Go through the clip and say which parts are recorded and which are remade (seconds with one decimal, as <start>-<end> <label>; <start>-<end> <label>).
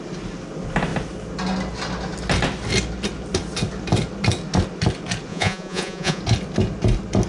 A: 0.0-5.3 recorded; 5.3-6.2 remade; 6.2-7.3 recorded